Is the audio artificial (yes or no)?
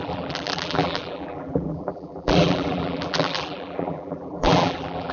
yes